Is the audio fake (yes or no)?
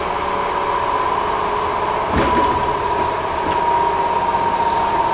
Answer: no